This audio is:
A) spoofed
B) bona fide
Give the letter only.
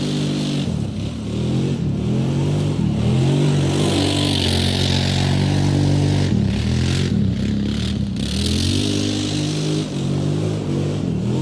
B